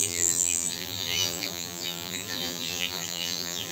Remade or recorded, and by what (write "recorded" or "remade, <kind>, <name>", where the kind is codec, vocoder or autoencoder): remade, vocoder, BigVGAN v2